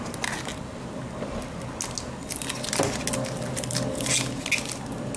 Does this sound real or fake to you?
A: real